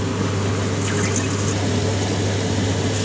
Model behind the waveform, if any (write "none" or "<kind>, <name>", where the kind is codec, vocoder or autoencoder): none